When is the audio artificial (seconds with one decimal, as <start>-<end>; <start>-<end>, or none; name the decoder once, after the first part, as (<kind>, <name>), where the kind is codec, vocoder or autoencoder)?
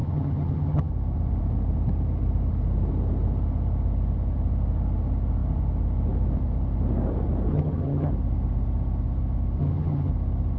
0.0-0.9 (vocoder, HiFi-GAN); 7.5-8.1; 9.6-10.1